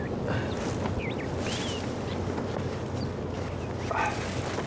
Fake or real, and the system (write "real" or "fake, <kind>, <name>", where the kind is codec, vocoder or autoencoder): real